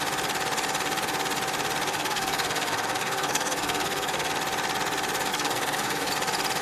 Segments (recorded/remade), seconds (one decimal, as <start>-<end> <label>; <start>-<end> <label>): 0.0-1.9 recorded; 1.9-4.3 remade; 4.3-5.3 recorded; 5.3-6.1 remade; 6.1-6.6 recorded